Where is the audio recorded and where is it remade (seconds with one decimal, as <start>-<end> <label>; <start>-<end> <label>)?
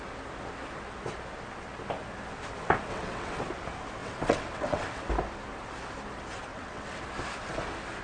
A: 0.0-2.9 recorded; 2.9-3.4 remade; 3.4-4.0 recorded; 4.0-5.1 remade; 5.1-6.5 recorded; 6.5-7.0 remade; 7.0-8.0 recorded